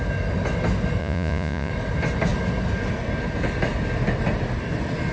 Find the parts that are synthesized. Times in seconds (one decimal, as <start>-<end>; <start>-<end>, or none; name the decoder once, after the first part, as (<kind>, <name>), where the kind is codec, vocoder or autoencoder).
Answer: 1.0-1.7 (vocoder, Vocos)